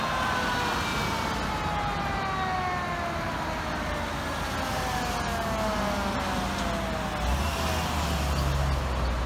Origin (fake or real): real